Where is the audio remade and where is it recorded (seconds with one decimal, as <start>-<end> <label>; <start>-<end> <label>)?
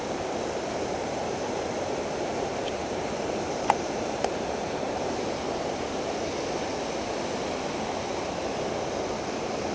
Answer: 0.0-1.2 recorded; 1.2-6.1 remade; 6.1-9.7 recorded